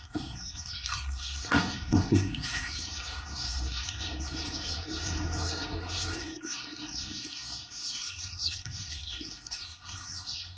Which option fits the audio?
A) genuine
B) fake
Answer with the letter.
B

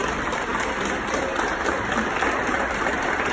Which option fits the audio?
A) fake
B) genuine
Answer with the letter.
B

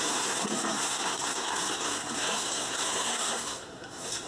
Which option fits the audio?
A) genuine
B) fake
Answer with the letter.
B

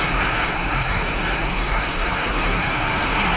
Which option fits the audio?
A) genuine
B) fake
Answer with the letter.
B